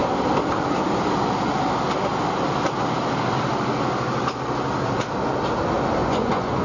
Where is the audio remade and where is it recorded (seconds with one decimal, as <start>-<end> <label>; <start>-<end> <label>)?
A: 0.0-6.0 recorded; 6.0-6.6 remade